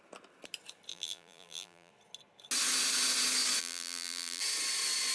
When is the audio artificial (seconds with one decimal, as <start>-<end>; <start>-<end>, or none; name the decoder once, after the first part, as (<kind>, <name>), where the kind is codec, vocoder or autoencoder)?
0.9-1.9 (vocoder, BigVGAN v2); 3.6-4.4